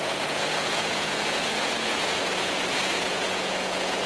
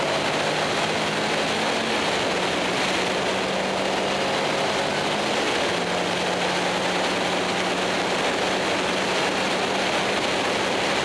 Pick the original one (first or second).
second